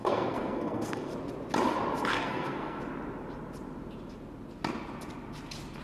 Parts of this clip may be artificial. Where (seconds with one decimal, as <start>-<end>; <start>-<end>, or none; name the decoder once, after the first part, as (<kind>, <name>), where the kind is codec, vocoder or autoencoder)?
0.0-1.1 (codec, SNAC); 2.1-2.8